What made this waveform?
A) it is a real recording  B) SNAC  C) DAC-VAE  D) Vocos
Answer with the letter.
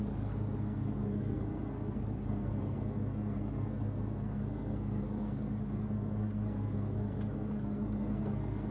B